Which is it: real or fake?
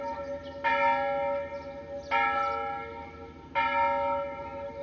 real